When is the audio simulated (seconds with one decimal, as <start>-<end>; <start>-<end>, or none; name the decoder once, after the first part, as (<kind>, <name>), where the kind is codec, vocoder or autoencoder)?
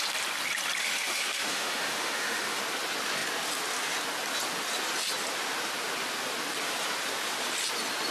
0.8-2.6 (autoencoder, DAC-VAE)